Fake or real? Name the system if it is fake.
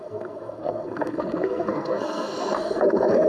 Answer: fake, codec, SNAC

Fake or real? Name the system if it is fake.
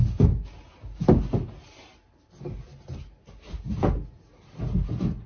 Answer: real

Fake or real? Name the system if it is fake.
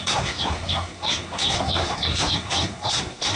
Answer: fake, codec, SNAC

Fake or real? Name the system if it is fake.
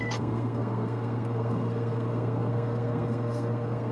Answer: fake, codec, SNAC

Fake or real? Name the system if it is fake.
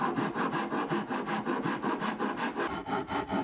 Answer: real